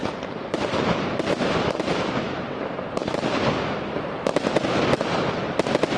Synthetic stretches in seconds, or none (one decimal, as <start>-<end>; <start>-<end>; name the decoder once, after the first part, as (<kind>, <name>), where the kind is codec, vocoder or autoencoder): 0.0-3.4 (vocoder, BigVGAN v2)